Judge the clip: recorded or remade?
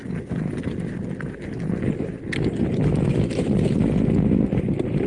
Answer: recorded